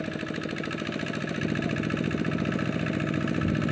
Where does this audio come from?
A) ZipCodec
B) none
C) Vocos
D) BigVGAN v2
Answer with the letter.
B